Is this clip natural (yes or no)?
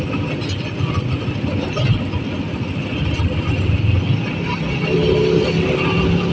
yes